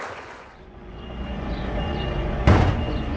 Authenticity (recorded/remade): remade